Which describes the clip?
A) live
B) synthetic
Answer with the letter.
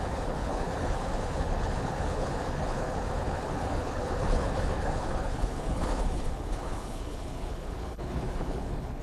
B